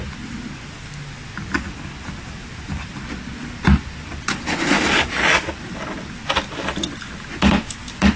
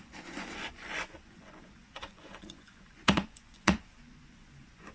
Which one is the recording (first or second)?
first